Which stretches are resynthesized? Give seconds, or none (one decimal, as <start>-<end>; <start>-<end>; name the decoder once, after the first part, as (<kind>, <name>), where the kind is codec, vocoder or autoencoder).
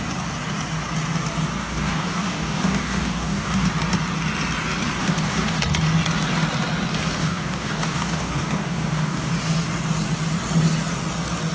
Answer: 1.6-3.7 (codec, DAC); 5.0-5.6; 7.2-9.3